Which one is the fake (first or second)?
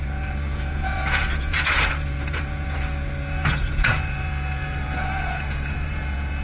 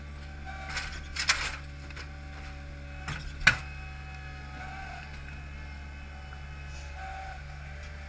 first